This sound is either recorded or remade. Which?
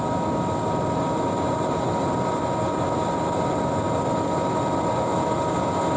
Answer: recorded